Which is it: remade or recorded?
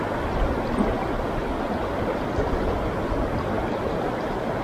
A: recorded